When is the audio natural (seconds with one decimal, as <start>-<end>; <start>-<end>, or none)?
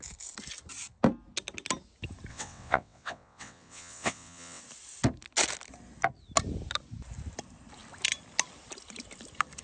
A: 0.0-2.3; 4.6-9.6